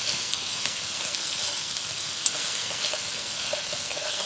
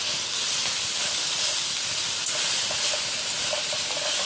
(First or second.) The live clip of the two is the second